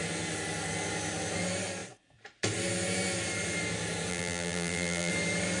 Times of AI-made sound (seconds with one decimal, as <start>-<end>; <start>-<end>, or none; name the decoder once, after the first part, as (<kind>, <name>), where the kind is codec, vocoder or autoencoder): 4.1-5.1 (vocoder, BigVGAN v2)